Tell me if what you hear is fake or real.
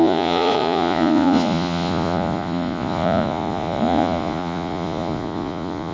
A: fake